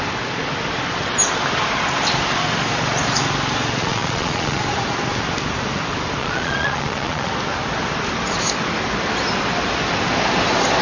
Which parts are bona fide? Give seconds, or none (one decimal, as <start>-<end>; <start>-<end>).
0.0-3.8; 4.6-6.2; 7.3-10.8